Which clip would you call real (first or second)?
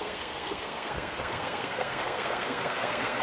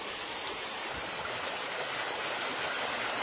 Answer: second